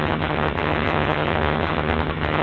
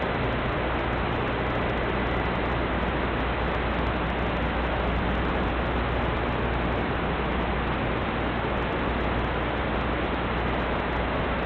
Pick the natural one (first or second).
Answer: second